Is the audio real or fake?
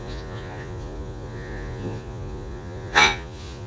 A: fake